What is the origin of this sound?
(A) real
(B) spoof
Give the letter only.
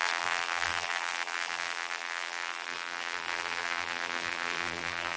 B